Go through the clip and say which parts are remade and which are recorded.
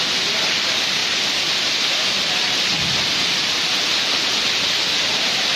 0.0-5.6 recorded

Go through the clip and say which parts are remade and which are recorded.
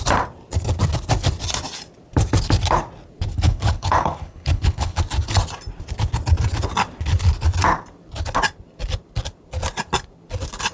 0.0-3.3 recorded; 3.3-5.0 remade; 5.0-10.7 recorded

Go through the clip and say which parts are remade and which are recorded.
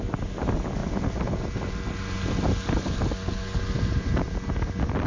0.0-5.1 recorded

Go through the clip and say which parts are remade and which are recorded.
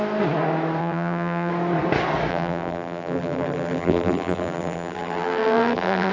0.0-0.8 recorded; 0.8-1.5 remade; 1.5-2.3 recorded; 2.3-6.1 remade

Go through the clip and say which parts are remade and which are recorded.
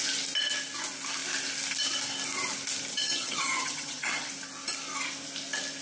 0.0-2.9 recorded; 2.9-4.3 remade; 4.3-5.8 recorded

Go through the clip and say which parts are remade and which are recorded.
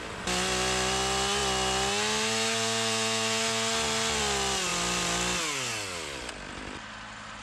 0.0-7.4 recorded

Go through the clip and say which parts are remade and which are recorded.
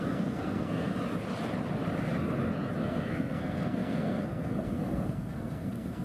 0.0-0.9 remade; 0.9-2.8 recorded; 2.8-6.0 remade